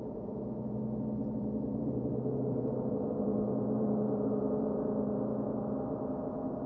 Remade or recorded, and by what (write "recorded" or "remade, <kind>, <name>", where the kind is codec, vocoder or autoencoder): remade, vocoder, BigVGAN v2